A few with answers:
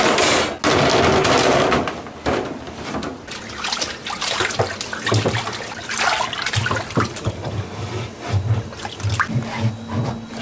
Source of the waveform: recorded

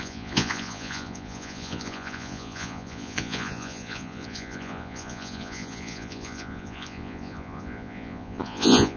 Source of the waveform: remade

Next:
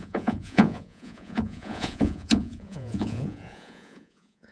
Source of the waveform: remade